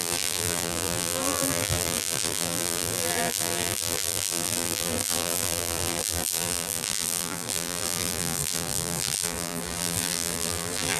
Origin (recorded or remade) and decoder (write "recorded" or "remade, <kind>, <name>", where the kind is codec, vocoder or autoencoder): remade, vocoder, BigVGAN v2